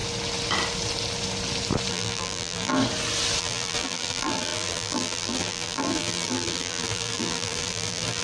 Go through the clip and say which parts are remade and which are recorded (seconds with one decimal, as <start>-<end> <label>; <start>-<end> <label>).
0.0-1.9 recorded; 1.9-2.8 remade; 2.8-3.4 recorded; 3.4-8.2 remade